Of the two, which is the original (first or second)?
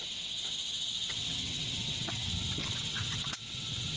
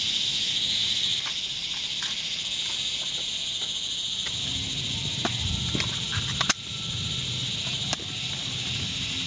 second